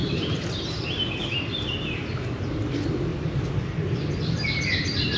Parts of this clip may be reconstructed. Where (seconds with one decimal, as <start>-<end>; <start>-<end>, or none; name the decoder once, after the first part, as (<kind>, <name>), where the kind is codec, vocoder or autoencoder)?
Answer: 0.0-0.8 (vocoder, BigVGAN v2)